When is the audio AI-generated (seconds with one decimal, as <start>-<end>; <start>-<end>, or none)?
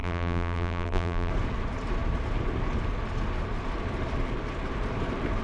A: 0.0-1.3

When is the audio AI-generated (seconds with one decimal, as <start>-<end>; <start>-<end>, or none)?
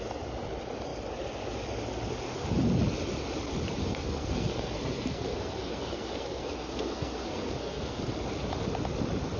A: 3.8-8.0